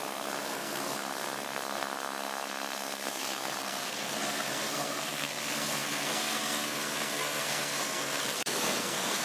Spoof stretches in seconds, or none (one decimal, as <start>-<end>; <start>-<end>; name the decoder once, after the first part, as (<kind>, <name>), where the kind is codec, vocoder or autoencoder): 0.0-9.2 (codec, SNAC)